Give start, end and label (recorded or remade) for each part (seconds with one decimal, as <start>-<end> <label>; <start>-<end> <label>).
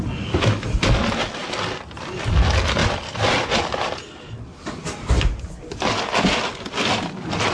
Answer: 0.0-7.5 recorded